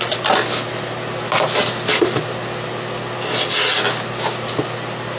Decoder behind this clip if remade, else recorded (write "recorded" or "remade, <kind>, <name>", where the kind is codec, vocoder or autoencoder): recorded